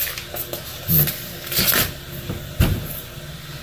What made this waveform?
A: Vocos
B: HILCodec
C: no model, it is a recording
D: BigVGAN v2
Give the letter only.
C